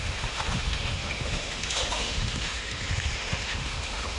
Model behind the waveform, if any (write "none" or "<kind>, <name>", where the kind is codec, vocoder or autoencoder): autoencoder, DAC-VAE